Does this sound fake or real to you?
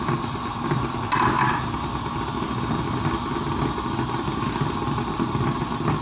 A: real